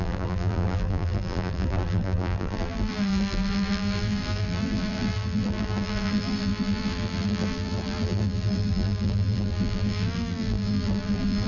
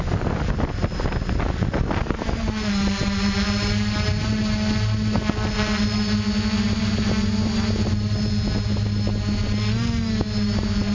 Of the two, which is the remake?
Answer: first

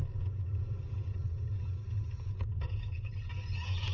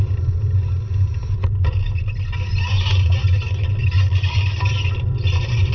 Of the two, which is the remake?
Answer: first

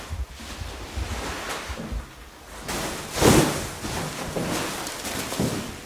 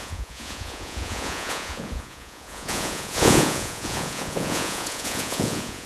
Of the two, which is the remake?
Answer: second